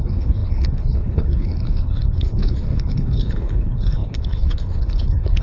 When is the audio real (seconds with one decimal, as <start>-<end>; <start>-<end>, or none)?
none